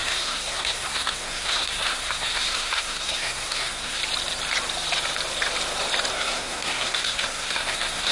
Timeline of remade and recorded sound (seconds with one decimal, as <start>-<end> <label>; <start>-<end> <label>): 0.0-4.0 remade; 4.0-6.1 recorded; 6.1-8.1 remade

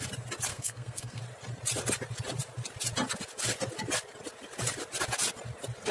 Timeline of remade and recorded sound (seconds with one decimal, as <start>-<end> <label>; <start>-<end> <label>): 0.0-0.5 recorded; 0.5-1.2 remade; 1.2-5.9 recorded

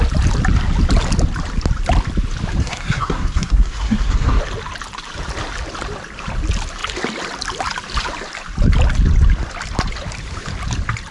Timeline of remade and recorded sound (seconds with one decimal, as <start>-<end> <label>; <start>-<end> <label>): 0.0-2.6 recorded; 2.6-4.4 remade; 4.4-11.1 recorded

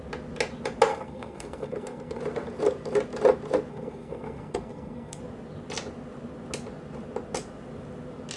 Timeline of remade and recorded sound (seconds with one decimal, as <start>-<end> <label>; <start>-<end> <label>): 0.0-0.9 recorded; 0.9-2.2 remade; 2.2-3.7 recorded; 3.7-5.2 remade; 5.2-8.4 recorded

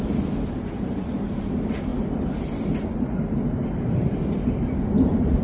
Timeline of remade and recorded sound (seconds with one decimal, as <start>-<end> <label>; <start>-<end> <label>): 0.0-5.4 recorded

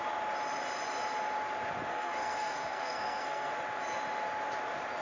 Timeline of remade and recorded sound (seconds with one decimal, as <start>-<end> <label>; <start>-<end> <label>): 0.0-1.9 recorded; 1.9-3.5 remade; 3.5-5.0 recorded